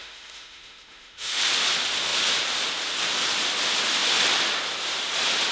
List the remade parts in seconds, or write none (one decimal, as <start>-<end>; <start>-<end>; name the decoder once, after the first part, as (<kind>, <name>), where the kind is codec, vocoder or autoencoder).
0.0-1.4 (autoencoder, DAC-VAE)